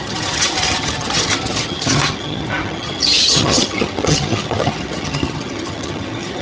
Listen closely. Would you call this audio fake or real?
fake